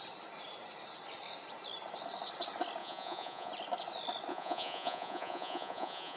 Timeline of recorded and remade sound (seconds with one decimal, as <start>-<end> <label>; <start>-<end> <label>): 0.0-2.8 recorded; 2.8-3.5 remade; 3.5-4.3 recorded; 4.3-6.2 remade